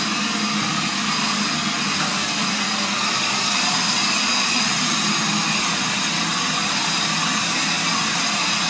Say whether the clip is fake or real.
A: real